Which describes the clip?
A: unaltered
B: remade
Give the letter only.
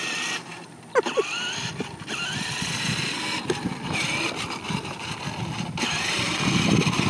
B